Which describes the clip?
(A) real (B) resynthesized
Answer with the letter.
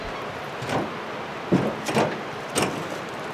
A